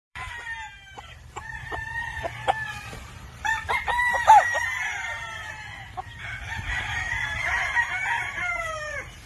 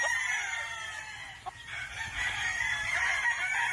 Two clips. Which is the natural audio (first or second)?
second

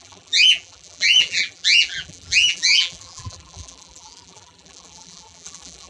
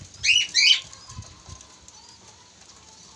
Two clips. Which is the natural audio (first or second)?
second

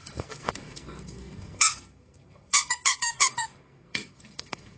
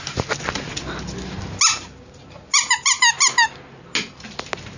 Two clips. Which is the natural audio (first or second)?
second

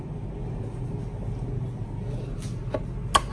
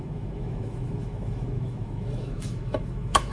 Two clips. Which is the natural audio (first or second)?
first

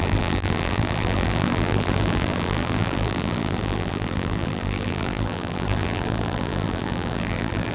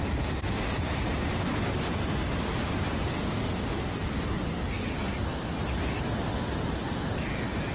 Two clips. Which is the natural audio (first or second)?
second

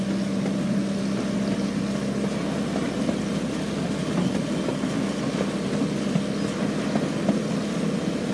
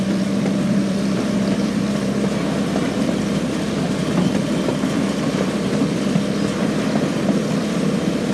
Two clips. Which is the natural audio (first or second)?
first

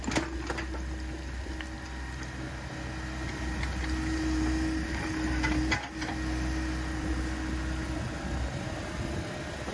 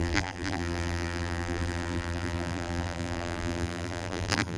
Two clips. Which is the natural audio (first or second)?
first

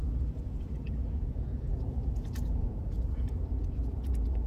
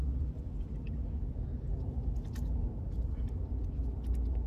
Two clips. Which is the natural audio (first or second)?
second